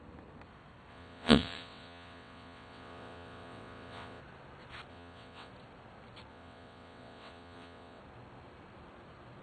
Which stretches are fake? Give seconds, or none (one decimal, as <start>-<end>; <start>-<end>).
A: 0.9-4.2; 4.9-5.5; 6.3-8.0